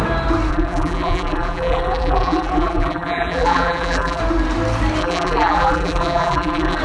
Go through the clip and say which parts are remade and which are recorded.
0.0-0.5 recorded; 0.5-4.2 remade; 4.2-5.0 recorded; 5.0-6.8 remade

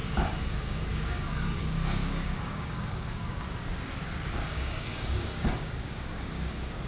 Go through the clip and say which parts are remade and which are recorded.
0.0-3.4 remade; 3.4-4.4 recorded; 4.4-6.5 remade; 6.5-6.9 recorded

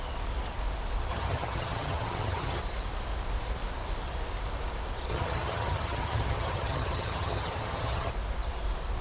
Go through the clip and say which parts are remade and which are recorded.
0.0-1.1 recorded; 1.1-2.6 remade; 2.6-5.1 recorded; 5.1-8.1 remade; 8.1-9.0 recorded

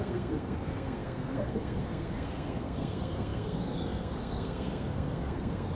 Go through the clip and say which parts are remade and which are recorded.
0.0-5.7 remade